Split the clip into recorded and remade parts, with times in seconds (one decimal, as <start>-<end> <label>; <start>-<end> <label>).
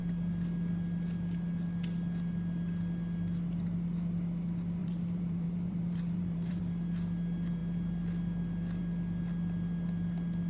0.0-4.8 recorded; 4.8-6.6 remade; 6.6-10.5 recorded